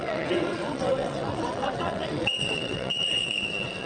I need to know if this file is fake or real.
fake